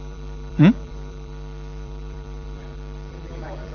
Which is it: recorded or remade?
remade